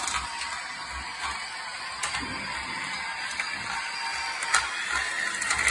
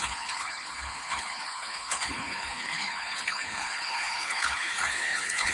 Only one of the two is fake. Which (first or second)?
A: second